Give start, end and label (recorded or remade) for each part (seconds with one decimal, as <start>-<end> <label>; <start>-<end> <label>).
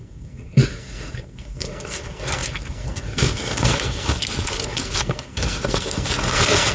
0.0-6.7 remade